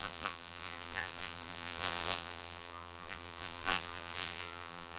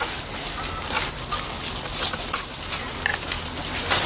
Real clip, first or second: second